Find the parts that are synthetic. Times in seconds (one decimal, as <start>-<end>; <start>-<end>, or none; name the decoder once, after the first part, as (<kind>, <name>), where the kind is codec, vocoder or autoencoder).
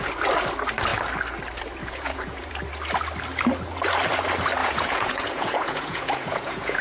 1.8-2.5 (vocoder, Vocos); 4.6-6.8